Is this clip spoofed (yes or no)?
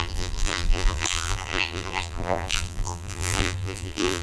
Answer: yes